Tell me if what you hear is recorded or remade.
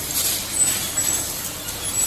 recorded